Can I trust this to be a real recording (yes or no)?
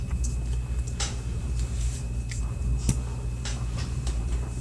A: no